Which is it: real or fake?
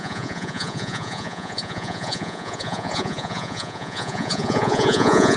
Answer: fake